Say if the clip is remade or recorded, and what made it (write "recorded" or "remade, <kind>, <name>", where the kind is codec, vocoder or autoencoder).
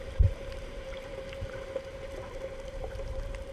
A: remade, vocoder, BigVGAN v2